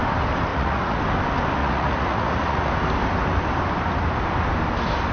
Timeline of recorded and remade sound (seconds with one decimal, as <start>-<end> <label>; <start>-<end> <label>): 0.0-0.5 recorded; 0.5-1.0 remade; 1.0-1.6 recorded; 1.6-2.7 remade; 2.7-5.1 recorded